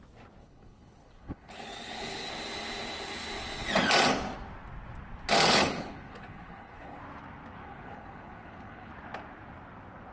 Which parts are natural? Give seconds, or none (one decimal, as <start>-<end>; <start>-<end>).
0.0-0.4; 2.3-5.5; 7.0-7.6; 8.9-10.1